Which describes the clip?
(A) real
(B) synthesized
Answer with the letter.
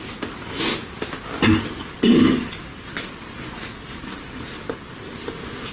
A